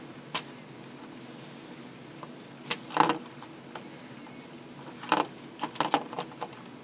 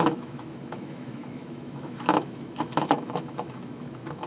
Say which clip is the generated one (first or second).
second